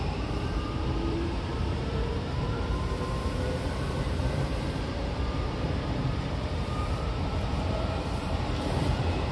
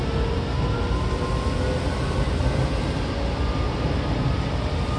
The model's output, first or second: first